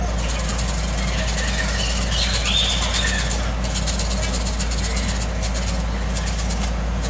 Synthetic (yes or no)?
no